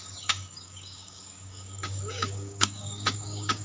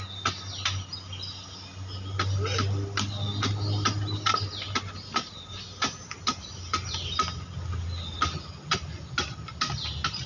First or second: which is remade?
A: first